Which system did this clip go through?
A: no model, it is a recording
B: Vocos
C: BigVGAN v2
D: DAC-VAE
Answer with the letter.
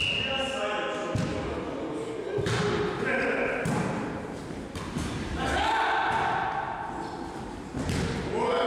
A